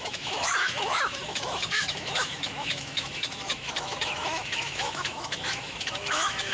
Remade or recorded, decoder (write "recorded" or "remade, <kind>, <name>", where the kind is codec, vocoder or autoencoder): remade, autoencoder, DAC-VAE